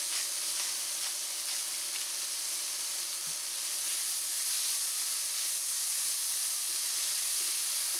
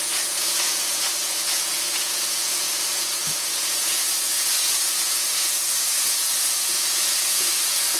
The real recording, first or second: first